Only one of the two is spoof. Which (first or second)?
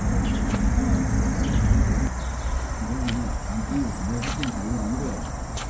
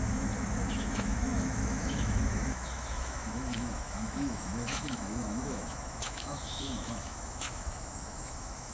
second